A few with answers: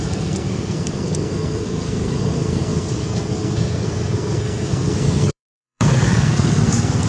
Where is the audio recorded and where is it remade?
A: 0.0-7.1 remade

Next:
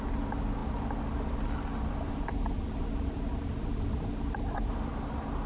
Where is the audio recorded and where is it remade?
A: 0.0-5.5 recorded

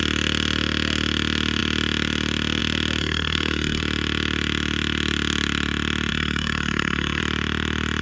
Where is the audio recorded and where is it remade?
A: 0.0-3.0 recorded; 3.0-3.8 remade; 3.8-6.1 recorded; 6.1-7.2 remade; 7.2-8.0 recorded

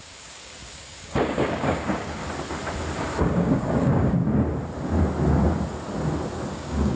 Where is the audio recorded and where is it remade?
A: 0.0-2.2 remade; 2.2-3.2 recorded; 3.2-4.2 remade; 4.2-6.5 recorded; 6.5-7.0 remade

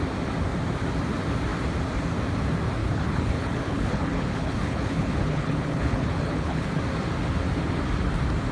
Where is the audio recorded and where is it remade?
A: 0.0-2.8 recorded; 2.8-6.8 remade; 6.8-8.5 recorded